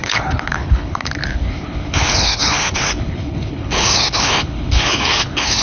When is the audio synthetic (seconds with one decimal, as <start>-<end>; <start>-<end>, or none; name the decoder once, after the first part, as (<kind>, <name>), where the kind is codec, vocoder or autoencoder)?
0.0-5.6 (codec, HILCodec)